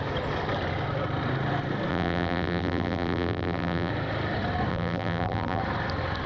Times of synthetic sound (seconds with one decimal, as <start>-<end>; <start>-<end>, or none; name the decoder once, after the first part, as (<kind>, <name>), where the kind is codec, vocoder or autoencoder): 1.9-3.9 (vocoder, BigVGAN v2); 4.7-5.6